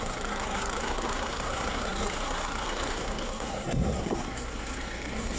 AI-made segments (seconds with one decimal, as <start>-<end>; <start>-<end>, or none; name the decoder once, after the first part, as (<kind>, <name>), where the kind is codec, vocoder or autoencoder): 0.0-5.4 (codec, SNAC)